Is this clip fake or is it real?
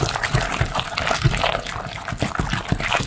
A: real